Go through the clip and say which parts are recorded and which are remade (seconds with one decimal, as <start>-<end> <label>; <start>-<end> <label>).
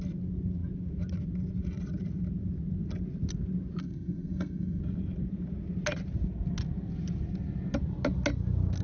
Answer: 0.0-3.8 recorded; 3.8-4.8 remade; 4.8-8.8 recorded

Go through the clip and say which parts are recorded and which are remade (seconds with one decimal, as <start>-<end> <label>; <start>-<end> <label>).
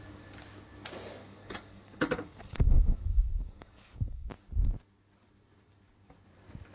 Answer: 0.0-1.2 recorded; 1.2-4.3 remade; 4.3-6.7 recorded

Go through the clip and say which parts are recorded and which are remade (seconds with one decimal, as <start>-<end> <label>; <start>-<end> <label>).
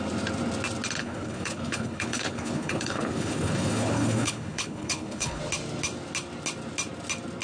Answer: 0.0-1.0 recorded; 1.0-5.4 remade; 5.4-7.4 recorded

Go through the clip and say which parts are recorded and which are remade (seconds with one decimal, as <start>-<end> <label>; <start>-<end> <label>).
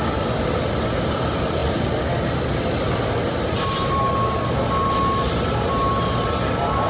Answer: 0.0-6.9 recorded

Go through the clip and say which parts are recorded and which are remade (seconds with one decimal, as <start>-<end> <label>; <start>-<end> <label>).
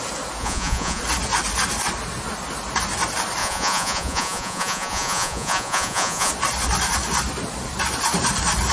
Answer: 0.0-0.4 recorded; 0.4-1.0 remade; 1.0-3.4 recorded; 3.4-6.3 remade; 6.3-8.7 recorded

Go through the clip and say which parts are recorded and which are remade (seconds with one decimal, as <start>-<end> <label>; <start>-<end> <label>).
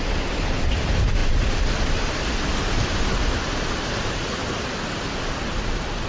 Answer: 0.0-6.1 recorded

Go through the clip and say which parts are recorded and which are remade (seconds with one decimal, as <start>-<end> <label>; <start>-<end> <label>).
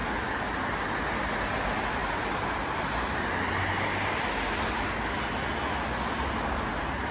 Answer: 0.0-7.1 recorded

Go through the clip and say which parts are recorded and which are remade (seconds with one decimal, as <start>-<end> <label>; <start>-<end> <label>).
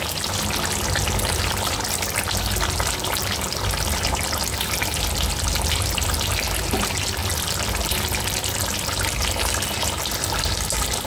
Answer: 0.0-11.1 recorded